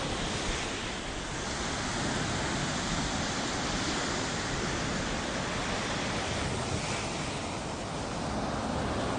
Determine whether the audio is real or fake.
real